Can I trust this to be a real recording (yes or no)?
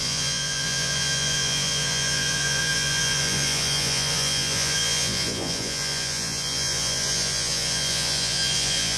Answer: no